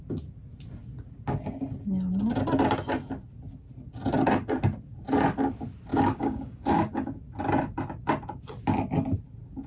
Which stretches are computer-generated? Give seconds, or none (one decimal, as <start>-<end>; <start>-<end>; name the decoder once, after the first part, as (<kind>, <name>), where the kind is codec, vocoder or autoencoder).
5.9-7.1 (codec, DAC)

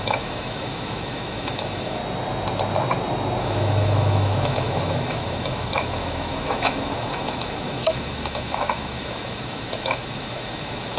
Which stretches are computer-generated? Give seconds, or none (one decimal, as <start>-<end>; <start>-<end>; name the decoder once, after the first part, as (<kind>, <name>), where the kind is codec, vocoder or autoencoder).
0.0-2.0 (autoencoder, DAC-VAE); 3.4-11.0

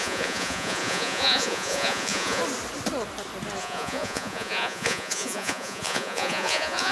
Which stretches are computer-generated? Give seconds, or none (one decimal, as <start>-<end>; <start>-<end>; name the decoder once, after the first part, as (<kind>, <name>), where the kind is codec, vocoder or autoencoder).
0.0-2.4 (vocoder, Vocos); 3.6-6.9

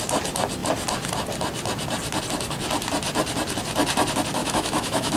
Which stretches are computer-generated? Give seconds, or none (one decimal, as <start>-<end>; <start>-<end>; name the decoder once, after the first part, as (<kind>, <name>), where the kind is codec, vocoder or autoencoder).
4.4-5.2 (autoencoder, DAC-VAE)

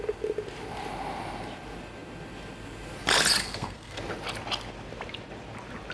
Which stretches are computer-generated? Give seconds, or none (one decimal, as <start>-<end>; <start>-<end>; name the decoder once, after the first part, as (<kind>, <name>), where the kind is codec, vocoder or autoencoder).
3.4-4.0 (codec, SNAC)

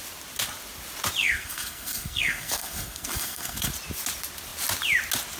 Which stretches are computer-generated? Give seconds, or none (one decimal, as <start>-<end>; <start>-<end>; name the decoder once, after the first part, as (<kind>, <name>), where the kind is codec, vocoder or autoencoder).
1.2-3.7 (codec, SNAC)